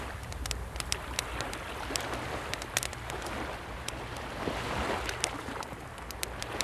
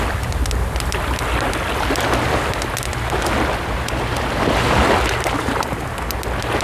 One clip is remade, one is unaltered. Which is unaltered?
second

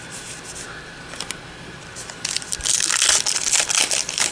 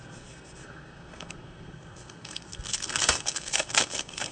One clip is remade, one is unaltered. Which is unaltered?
first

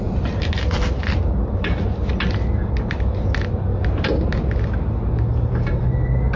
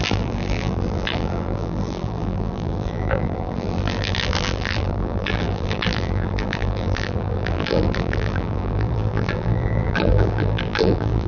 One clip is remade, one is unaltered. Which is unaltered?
first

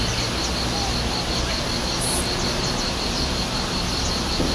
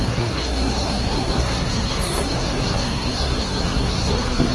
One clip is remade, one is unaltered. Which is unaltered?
first